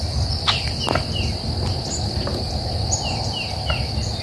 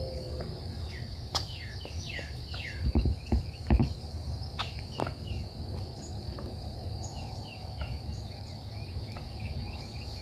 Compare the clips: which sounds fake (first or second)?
second